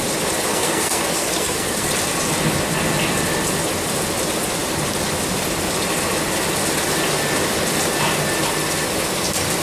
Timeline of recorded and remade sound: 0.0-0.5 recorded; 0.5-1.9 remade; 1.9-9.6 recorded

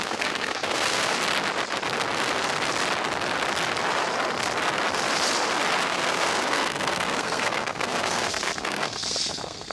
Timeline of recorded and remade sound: 0.0-1.1 remade; 1.1-5.8 recorded; 5.8-9.7 remade

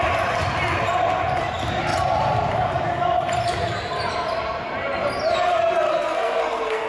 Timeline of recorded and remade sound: 0.0-5.9 recorded; 5.9-6.9 remade

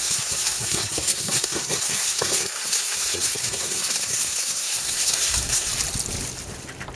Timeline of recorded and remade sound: 0.0-5.7 remade; 5.7-7.0 recorded

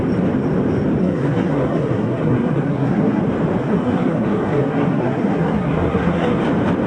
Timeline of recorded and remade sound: 0.0-1.0 recorded; 1.0-3.2 remade; 3.2-3.6 recorded; 3.6-6.4 remade; 6.4-6.9 recorded